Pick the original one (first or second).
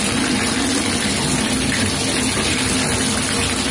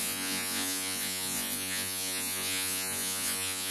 first